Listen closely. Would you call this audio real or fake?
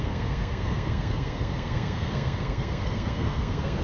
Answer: fake